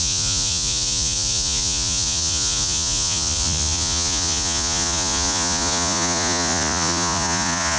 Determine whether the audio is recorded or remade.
remade